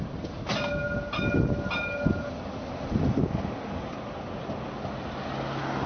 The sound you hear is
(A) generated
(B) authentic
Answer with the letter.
B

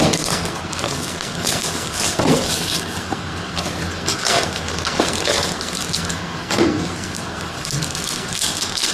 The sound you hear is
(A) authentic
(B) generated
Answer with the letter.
B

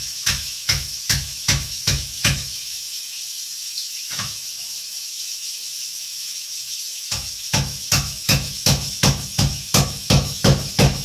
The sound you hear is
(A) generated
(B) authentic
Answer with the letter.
A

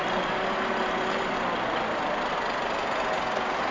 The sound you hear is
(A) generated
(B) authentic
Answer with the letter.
B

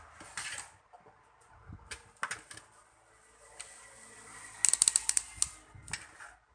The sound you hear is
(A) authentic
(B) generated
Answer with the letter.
A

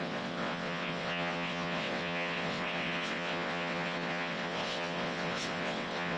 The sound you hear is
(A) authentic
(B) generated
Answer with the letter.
B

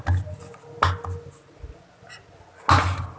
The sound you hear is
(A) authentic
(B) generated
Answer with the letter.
A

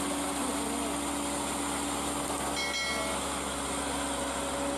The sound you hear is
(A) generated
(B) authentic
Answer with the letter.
B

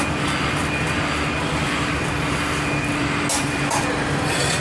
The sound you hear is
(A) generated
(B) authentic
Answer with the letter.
B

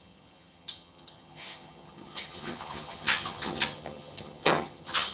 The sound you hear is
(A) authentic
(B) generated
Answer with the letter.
B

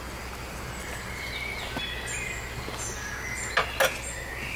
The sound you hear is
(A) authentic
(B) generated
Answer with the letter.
A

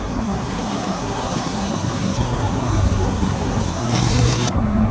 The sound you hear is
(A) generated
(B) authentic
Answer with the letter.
A